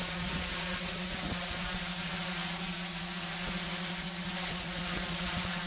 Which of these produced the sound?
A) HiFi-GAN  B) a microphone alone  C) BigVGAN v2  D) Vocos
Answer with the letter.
D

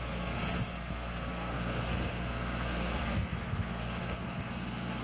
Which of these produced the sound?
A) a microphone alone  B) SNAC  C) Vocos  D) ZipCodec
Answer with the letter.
B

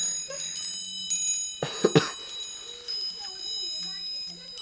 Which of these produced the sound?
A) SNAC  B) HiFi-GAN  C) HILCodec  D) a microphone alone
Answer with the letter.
D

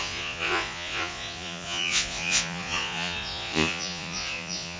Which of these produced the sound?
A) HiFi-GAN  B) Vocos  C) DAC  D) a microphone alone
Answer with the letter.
B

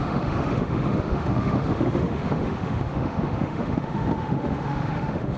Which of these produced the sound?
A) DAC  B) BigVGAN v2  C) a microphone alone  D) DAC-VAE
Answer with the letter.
D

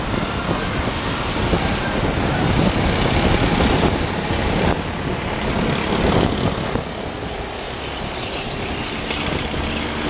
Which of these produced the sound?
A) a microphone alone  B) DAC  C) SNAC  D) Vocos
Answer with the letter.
A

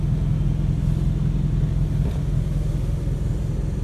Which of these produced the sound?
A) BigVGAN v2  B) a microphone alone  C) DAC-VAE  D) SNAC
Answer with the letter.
B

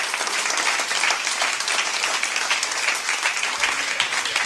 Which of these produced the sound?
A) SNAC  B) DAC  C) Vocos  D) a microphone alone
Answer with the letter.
D